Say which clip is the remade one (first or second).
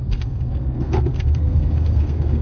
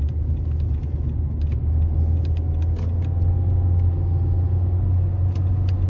first